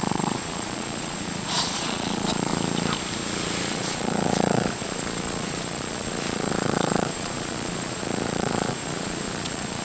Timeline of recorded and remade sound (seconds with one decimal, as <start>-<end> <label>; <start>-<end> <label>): 0.0-2.5 remade; 2.5-3.6 recorded; 3.6-9.8 remade